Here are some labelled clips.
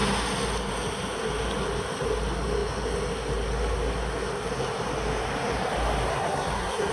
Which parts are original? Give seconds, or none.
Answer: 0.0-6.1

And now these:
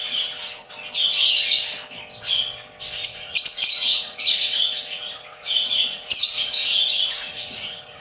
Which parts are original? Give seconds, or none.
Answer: 0.7-3.0

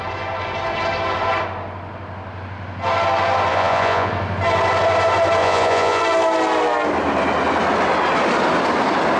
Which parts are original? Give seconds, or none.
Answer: 0.0-3.5; 4.1-5.4; 6.0-9.2

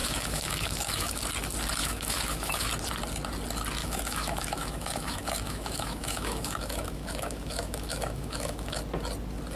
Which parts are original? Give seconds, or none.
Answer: 1.2-1.8; 2.7-3.8; 8.8-9.6

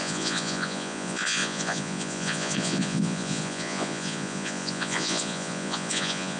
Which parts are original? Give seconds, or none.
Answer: none

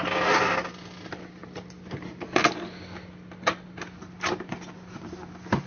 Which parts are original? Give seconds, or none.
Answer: 1.4-4.0

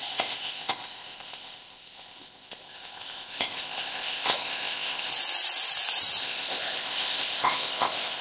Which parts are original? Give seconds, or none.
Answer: 5.1-6.2

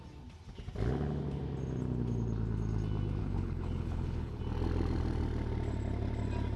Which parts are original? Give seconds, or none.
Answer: 0.0-3.2; 4.4-6.6